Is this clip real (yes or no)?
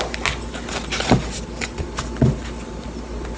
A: yes